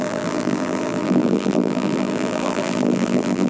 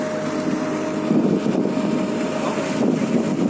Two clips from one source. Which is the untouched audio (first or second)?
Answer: second